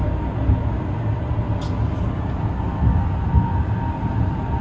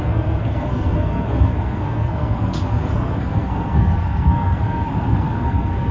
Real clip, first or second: first